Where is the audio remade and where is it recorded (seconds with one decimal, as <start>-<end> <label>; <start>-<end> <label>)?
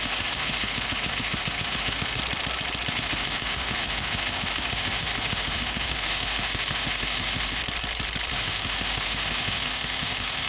0.0-2.2 remade; 2.2-2.9 recorded; 2.9-7.6 remade; 7.6-8.3 recorded; 8.3-10.5 remade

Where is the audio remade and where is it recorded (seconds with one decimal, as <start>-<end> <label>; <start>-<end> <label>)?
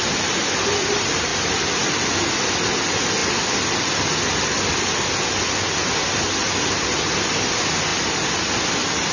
0.0-9.1 recorded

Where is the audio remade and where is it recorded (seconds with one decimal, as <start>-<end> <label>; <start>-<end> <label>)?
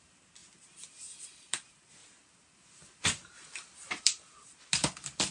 0.0-5.3 recorded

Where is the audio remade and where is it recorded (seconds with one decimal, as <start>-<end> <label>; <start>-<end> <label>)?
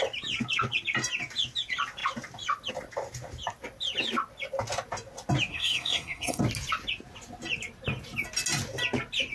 0.0-5.5 recorded; 5.5-6.4 remade; 6.4-9.3 recorded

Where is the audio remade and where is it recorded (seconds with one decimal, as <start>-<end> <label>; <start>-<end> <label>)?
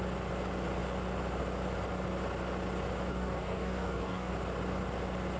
0.0-3.1 recorded; 3.1-4.3 remade; 4.3-5.4 recorded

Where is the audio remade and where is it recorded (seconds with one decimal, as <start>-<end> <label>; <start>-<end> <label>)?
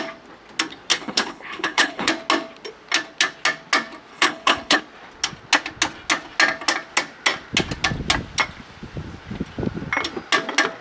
0.0-0.9 recorded; 0.9-2.1 remade; 2.1-4.1 recorded; 4.1-4.8 remade; 4.8-10.8 recorded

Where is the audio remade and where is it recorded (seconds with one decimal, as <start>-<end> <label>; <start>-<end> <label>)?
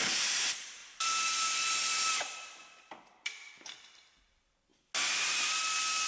0.0-4.7 remade; 4.7-6.1 recorded